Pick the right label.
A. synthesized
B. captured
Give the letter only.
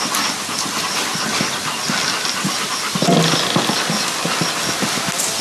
B